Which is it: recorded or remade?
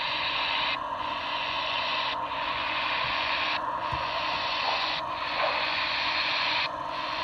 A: remade